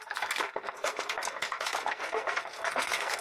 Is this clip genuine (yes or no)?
no